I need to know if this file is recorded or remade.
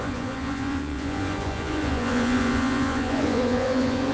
remade